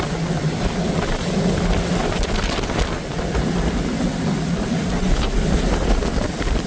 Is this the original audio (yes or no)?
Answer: no